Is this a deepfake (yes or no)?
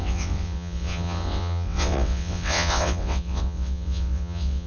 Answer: yes